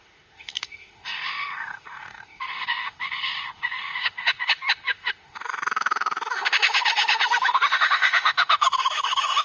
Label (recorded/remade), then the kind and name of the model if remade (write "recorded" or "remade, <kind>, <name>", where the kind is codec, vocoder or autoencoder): remade, autoencoder, DAC-VAE